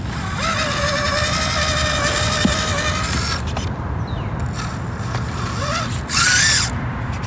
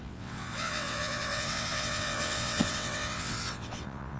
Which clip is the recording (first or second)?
first